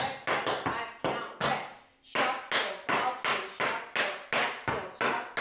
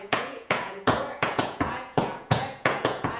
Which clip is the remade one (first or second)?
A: second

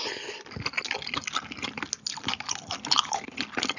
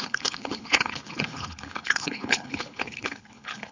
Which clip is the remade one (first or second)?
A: second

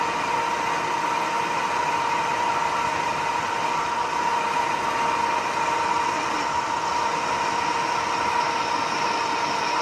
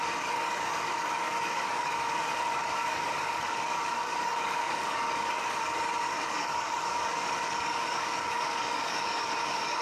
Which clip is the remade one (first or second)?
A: second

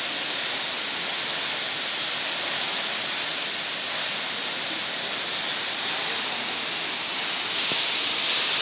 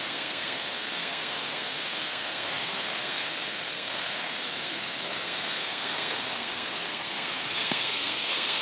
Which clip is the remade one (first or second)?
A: second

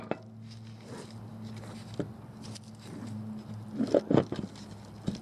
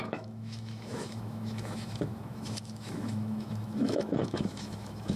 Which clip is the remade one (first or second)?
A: second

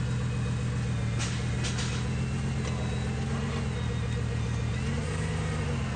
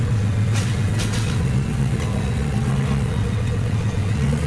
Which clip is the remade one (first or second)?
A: second